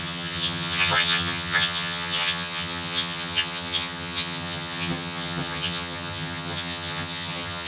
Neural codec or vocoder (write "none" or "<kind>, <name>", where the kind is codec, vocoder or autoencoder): vocoder, HiFi-GAN